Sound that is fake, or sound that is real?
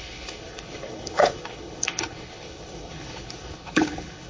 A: fake